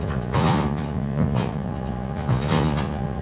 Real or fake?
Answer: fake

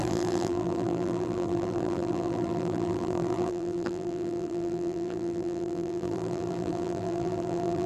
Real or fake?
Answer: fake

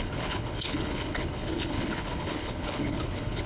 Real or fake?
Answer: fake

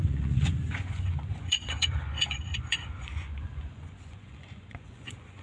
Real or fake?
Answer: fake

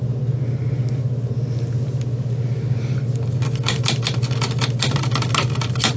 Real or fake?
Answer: real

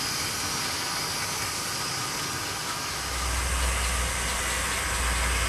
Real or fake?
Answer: real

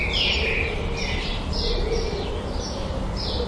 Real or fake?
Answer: real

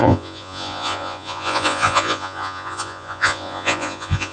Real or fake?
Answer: fake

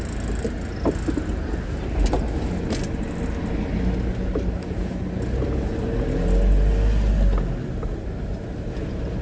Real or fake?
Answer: real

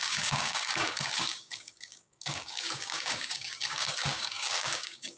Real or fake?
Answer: fake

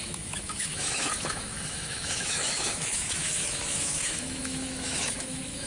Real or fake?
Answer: fake